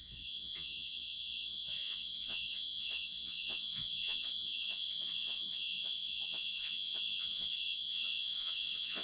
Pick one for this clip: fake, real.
fake